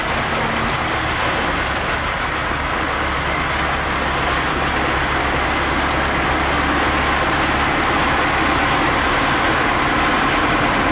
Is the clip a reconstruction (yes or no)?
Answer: no